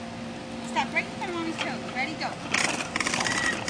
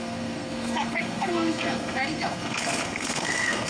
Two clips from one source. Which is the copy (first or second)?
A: second